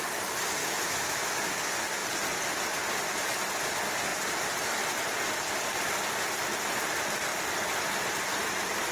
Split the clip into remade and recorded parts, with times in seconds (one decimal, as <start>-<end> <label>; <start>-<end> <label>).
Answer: 0.0-0.6 recorded; 0.6-1.3 remade; 1.3-8.9 recorded

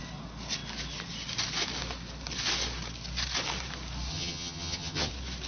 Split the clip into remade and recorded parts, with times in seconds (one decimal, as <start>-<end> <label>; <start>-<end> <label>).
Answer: 0.0-4.1 recorded; 4.1-5.1 remade; 5.1-5.5 recorded

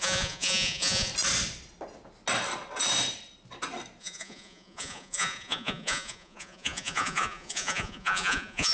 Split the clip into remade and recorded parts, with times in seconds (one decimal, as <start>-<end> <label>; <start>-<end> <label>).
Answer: 0.0-1.1 remade; 1.1-4.0 recorded; 4.0-8.7 remade